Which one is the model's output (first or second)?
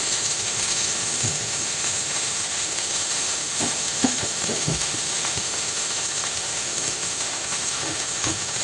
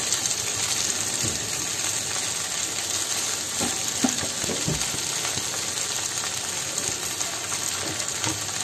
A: first